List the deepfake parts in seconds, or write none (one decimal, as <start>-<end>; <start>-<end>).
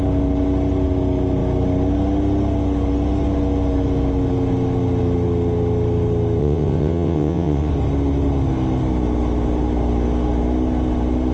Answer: 6.4-7.7